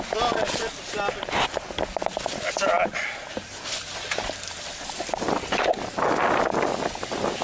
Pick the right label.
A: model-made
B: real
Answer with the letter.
B